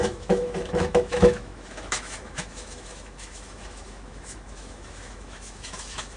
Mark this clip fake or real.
fake